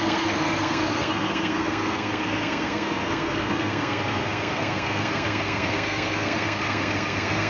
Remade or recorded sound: remade